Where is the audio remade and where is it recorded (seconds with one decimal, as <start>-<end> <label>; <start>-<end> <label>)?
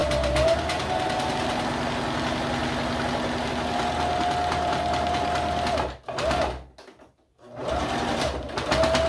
0.0-7.6 recorded; 7.6-8.5 remade; 8.5-9.1 recorded